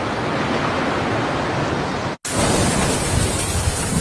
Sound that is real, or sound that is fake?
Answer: real